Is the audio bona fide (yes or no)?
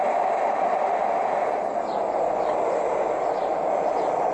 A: yes